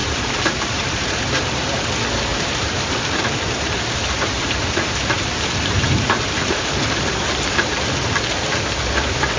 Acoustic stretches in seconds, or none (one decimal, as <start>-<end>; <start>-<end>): 1.7-2.3; 7.5-9.4